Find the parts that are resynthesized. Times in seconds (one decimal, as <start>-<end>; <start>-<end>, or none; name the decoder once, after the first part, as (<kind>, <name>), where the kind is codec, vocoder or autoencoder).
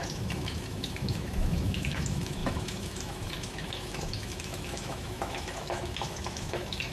0.0-6.9 (autoencoder, DAC-VAE)